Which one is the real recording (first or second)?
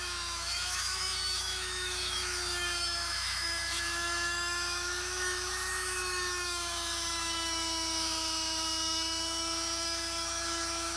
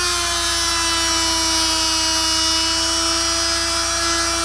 second